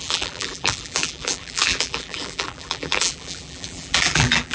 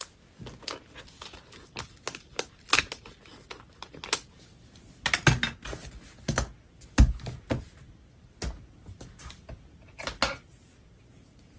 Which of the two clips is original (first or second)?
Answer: second